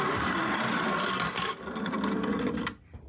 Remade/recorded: recorded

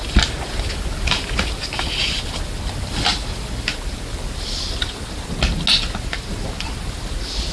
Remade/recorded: recorded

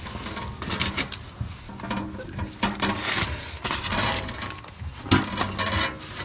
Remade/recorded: recorded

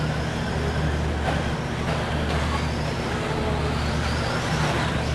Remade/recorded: recorded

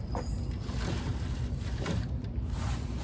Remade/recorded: recorded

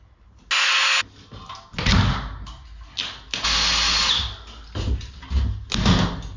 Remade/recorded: recorded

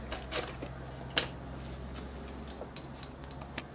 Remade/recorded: recorded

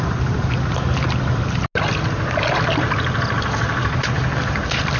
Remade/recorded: recorded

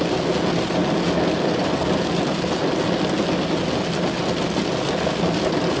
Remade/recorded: recorded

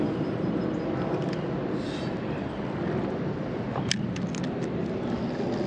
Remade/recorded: recorded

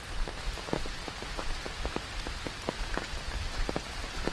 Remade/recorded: recorded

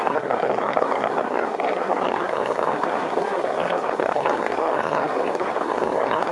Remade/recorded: remade